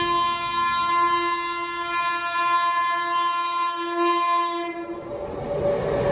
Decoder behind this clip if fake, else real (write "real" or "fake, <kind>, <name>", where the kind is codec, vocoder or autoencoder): real